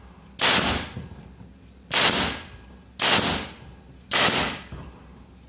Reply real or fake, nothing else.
real